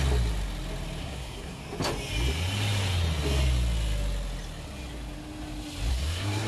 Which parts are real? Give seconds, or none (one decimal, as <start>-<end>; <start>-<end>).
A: 0.0-1.0; 1.6-5.9